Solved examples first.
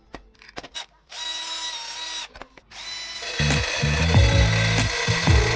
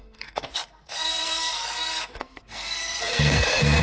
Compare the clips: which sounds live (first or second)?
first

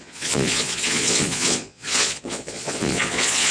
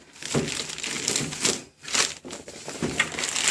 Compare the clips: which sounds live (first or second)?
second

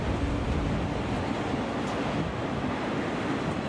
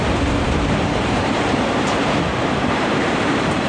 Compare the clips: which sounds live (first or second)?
first